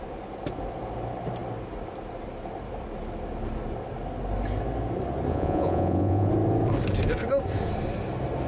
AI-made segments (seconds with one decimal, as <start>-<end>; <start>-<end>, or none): 5.3-6.3